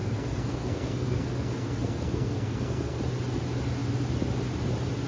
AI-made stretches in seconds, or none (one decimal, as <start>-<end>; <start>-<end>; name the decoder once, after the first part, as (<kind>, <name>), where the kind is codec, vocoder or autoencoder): 0.0-3.0 (codec, SNAC)